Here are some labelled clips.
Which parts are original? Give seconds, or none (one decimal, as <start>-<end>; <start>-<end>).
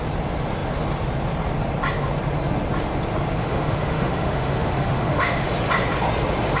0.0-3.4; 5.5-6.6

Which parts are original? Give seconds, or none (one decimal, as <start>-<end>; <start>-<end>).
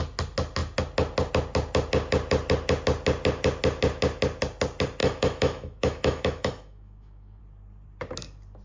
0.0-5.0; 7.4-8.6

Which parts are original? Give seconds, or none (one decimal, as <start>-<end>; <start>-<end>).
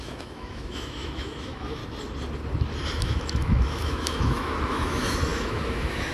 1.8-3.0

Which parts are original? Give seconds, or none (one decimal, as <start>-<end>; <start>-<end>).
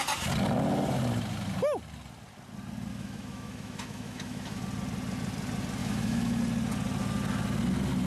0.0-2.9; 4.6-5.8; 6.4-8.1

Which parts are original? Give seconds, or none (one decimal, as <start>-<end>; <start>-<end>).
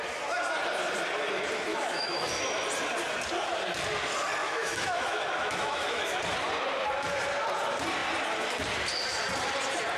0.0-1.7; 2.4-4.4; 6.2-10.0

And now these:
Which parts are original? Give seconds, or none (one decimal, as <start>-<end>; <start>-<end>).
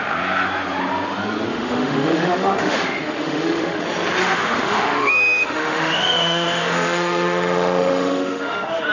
0.0-1.5; 3.8-4.2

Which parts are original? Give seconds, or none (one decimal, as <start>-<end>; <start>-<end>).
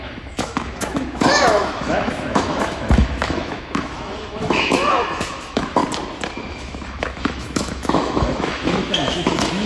5.8-6.5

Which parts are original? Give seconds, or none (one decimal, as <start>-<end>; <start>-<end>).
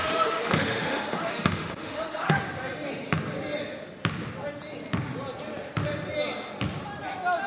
2.4-7.5